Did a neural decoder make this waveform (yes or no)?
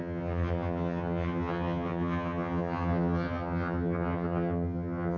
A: yes